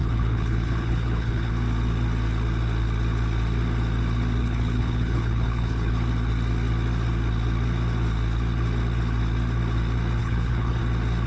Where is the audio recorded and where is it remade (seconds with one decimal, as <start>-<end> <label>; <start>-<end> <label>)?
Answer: 0.0-1.5 remade; 1.5-4.4 recorded; 4.4-5.9 remade; 5.9-10.2 recorded; 10.2-10.8 remade; 10.8-11.3 recorded